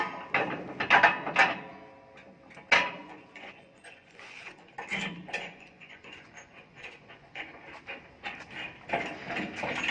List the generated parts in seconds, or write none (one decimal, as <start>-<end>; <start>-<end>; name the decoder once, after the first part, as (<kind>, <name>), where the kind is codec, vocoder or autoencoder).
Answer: 3.0-4.7 (vocoder, Vocos); 5.2-7.7